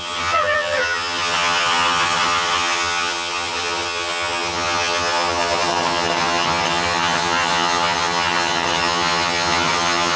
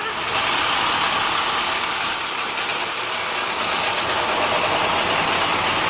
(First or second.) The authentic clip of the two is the second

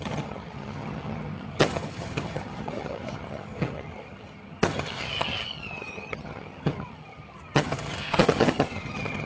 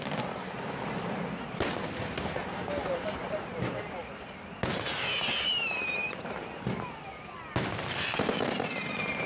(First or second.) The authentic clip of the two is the second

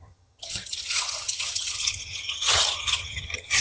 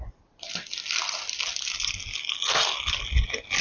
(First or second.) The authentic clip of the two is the second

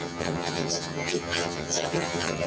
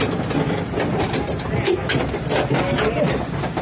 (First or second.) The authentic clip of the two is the second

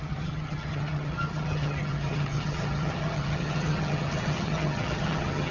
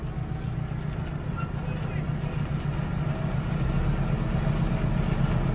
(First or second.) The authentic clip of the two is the second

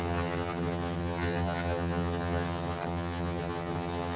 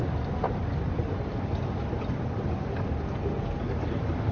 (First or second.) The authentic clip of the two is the second